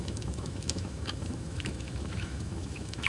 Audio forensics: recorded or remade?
remade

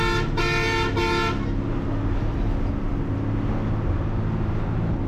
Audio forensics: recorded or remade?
recorded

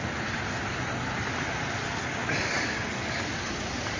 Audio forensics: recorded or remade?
recorded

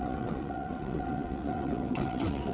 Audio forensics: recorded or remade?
remade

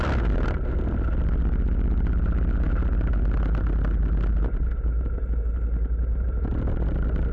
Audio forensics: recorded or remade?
recorded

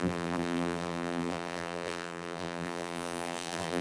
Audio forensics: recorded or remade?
remade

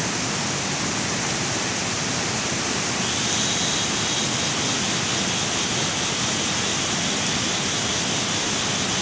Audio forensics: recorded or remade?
recorded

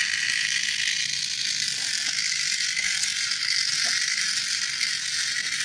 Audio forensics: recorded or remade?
recorded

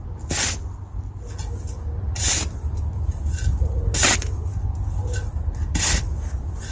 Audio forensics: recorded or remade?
recorded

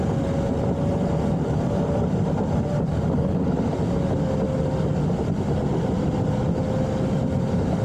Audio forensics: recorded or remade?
recorded